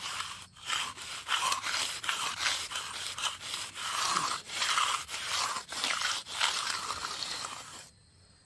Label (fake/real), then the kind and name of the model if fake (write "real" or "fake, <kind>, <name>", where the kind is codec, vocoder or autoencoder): fake, vocoder, BigVGAN v2